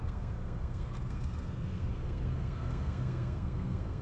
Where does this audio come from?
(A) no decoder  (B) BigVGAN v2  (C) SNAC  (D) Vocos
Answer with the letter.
C